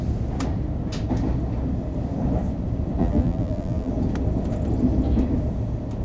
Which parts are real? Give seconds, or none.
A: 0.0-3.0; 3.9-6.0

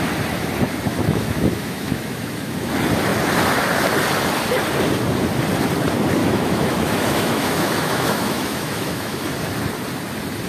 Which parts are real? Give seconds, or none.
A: 0.0-0.9; 2.7-6.2; 9.3-10.5

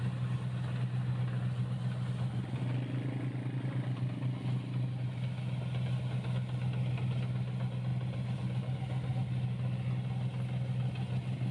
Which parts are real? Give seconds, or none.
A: 0.0-11.5

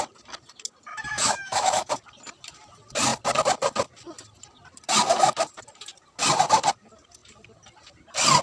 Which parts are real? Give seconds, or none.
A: 0.0-0.9; 1.9-8.4

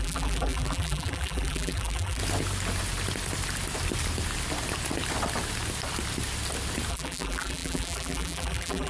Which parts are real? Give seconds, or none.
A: 2.2-6.9

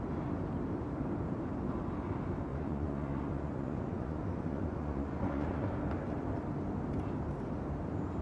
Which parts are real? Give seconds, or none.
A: 0.0-2.5; 5.7-8.2